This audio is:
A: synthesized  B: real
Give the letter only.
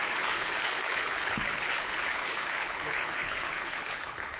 A